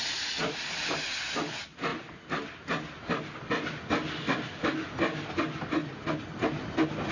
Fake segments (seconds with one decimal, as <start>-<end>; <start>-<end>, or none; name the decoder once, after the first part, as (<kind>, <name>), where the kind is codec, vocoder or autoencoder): none